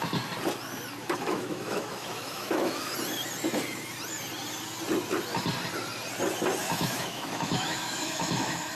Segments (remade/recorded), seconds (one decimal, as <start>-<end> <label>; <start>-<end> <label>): 0.0-1.0 recorded; 1.0-2.9 remade; 2.9-6.6 recorded; 6.6-8.8 remade